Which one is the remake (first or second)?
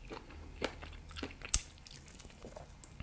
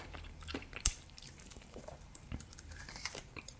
second